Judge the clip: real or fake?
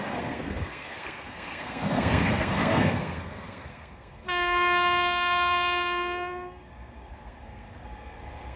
fake